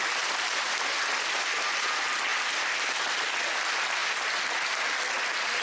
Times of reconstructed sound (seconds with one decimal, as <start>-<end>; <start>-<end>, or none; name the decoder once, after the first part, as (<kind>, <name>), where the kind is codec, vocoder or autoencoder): 0.0-2.3 (vocoder, BigVGAN v2); 3.6-4.0